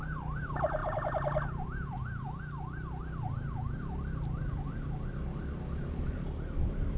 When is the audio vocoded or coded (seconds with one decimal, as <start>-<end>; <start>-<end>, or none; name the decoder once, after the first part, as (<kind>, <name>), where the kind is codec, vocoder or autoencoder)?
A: none